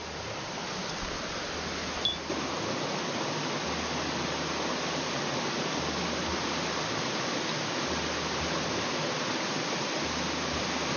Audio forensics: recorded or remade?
recorded